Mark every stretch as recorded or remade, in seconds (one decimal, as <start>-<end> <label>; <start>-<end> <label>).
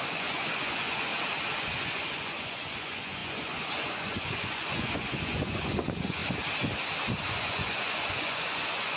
0.0-1.1 remade; 1.1-1.6 recorded; 1.6-6.2 remade; 6.2-7.3 recorded; 7.3-9.0 remade